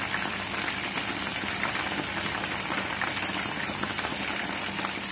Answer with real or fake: real